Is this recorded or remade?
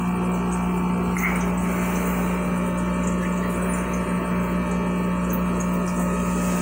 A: recorded